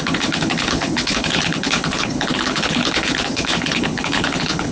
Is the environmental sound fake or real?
fake